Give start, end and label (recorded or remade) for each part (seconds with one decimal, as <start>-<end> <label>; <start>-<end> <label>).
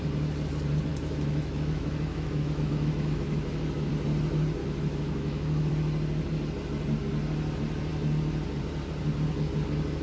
0.0-0.9 recorded; 0.9-3.9 remade; 3.9-4.6 recorded; 4.6-5.7 remade; 5.7-10.0 recorded